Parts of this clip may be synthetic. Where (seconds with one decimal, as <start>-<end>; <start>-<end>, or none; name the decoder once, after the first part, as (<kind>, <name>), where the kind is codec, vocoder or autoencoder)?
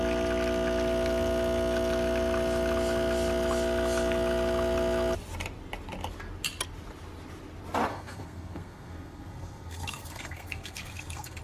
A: 7.9-11.4 (codec, SNAC)